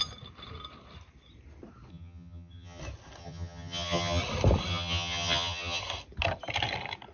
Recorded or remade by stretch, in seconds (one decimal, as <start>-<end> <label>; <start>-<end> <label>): 0.0-1.9 recorded; 1.9-2.8 remade; 2.8-3.2 recorded; 3.2-4.2 remade; 4.2-4.7 recorded; 4.7-5.8 remade; 5.8-7.1 recorded